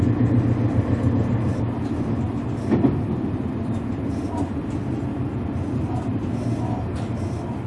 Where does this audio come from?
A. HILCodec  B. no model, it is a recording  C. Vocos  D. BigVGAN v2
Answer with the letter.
B